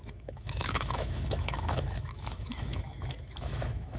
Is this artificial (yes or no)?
yes